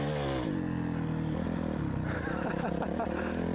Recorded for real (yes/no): yes